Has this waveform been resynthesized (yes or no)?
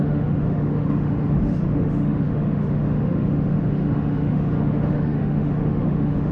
yes